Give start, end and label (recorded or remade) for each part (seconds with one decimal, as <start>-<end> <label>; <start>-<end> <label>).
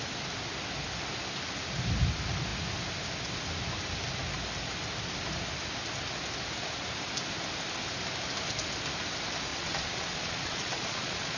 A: 0.0-9.5 recorded; 9.5-11.4 remade